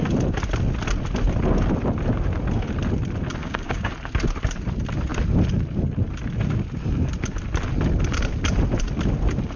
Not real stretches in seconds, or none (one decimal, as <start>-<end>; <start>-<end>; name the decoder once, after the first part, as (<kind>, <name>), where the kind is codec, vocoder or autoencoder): 3.4-3.9 (codec, DAC)